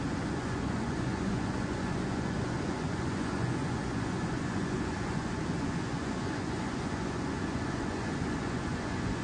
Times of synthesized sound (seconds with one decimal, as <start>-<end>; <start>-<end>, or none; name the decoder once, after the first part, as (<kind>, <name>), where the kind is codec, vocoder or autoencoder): 0.0-9.2 (vocoder, Vocos)